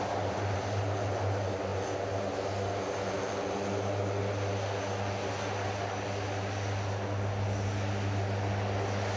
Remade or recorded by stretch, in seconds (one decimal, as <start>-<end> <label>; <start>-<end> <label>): 0.0-9.2 recorded